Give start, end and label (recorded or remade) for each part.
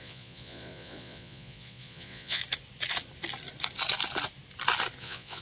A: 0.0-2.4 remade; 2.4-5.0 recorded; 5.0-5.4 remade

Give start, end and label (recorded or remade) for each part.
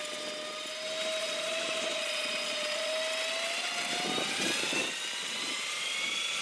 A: 0.0-1.2 recorded; 1.2-2.9 remade; 2.9-6.4 recorded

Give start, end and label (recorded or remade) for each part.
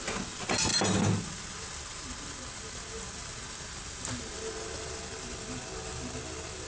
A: 0.0-6.7 recorded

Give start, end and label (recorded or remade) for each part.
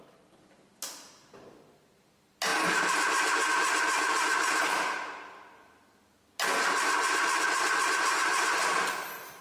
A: 0.0-9.4 recorded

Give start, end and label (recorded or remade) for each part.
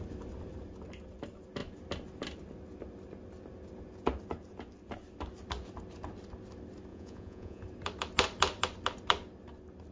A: 0.0-6.9 recorded; 6.9-7.6 remade; 7.6-9.9 recorded